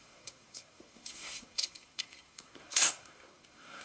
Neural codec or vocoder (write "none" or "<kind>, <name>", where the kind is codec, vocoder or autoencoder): codec, SNAC